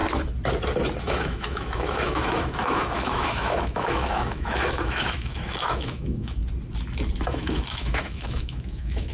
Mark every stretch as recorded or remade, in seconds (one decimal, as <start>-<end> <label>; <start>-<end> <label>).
0.0-1.0 recorded; 1.0-6.4 remade; 6.4-7.3 recorded; 7.3-9.1 remade